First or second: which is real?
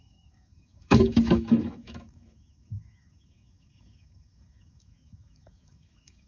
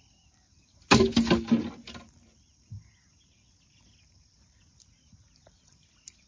second